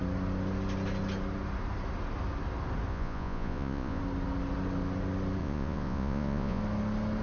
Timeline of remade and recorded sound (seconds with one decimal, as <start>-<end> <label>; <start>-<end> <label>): 0.0-2.9 recorded; 2.9-4.0 remade; 4.0-5.4 recorded; 5.4-6.6 remade; 6.6-7.2 recorded